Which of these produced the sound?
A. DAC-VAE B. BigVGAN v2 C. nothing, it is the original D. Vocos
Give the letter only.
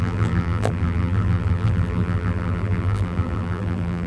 B